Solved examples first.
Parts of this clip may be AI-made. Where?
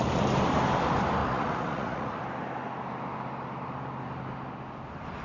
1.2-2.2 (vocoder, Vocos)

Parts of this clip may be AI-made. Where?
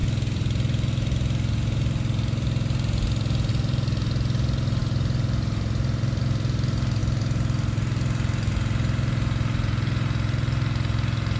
none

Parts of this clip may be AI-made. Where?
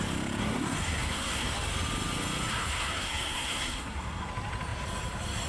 0.4-1.5 (codec, SNAC); 2.5-4.3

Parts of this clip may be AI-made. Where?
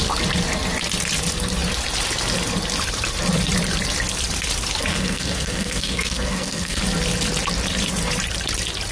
4.9-6.8 (codec, SNAC)